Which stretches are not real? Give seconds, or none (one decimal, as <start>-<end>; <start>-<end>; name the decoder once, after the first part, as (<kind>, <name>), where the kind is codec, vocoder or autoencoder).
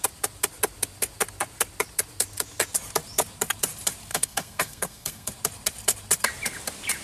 4.1-5.3 (codec, SNAC)